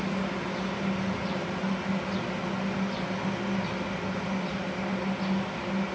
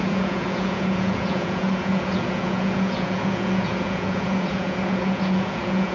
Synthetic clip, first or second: second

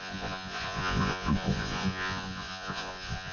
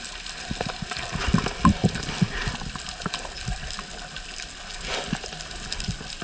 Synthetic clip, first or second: first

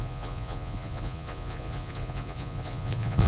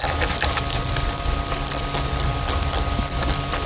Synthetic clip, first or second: first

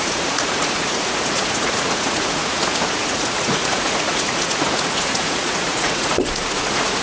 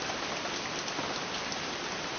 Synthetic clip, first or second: first